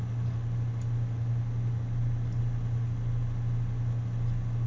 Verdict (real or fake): real